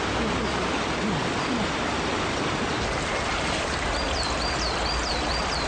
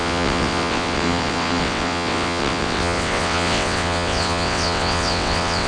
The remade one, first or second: second